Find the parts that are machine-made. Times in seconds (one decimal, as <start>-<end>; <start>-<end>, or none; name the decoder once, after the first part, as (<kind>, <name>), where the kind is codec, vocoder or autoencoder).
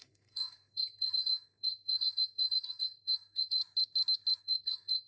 0.0-3.6 (codec, SNAC); 4.4-5.1